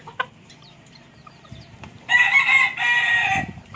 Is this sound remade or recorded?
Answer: recorded